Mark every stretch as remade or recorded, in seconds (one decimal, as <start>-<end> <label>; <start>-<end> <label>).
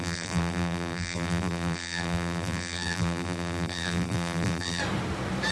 0.0-4.8 remade; 4.8-5.5 recorded